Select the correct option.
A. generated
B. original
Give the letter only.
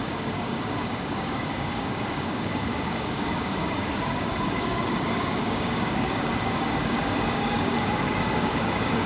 A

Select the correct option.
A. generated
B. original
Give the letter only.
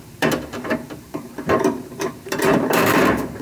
A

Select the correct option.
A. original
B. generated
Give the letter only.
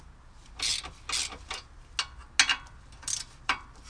A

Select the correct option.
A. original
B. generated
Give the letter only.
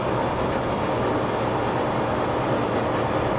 A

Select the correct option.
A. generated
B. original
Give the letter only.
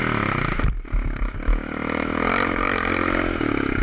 B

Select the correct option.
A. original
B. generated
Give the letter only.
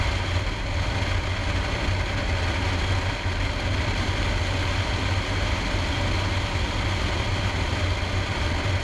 A